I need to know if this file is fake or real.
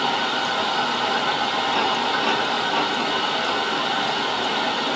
real